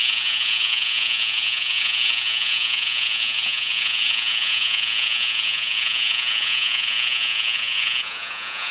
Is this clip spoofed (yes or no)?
yes